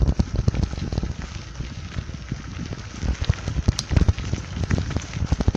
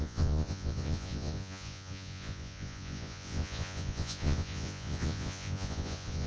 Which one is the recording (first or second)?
first